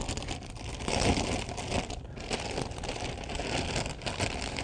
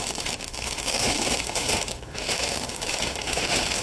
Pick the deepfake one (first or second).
second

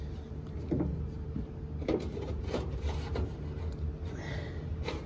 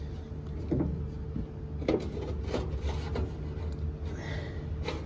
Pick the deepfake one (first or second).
first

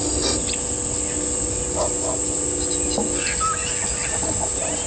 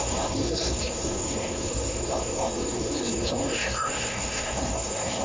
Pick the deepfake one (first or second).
second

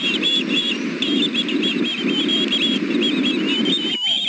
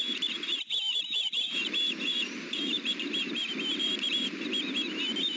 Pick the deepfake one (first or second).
second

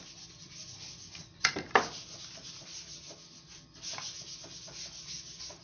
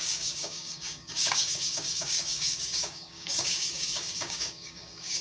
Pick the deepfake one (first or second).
second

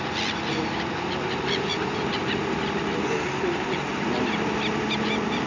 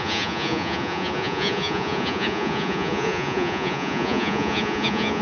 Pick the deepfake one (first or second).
second